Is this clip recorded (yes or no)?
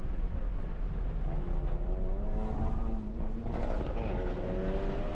yes